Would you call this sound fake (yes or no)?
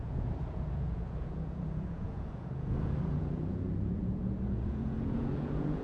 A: yes